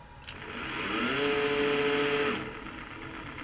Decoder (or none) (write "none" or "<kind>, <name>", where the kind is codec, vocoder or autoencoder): none